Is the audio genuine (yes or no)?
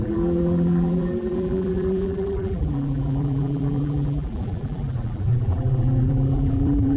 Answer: no